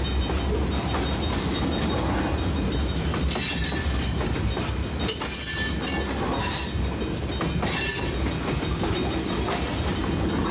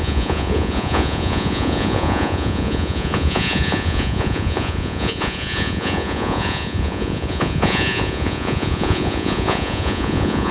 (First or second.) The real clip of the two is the first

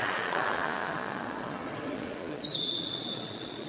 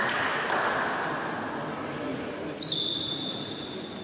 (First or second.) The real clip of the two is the second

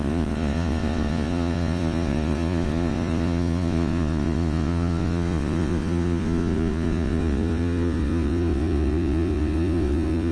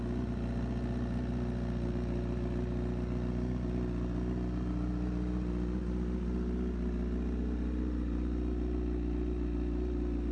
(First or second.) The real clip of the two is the second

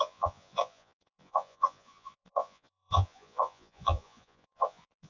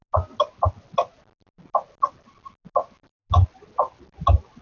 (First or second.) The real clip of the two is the second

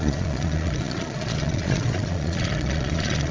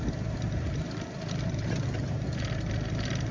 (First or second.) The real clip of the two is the second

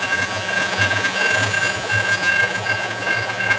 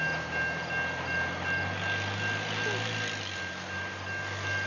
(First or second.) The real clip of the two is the second